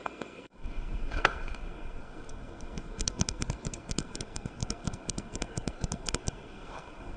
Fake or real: fake